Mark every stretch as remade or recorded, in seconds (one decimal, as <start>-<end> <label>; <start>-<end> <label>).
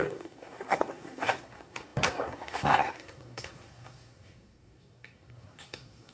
0.0-6.1 remade